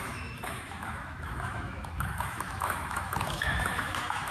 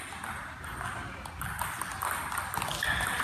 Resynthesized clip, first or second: first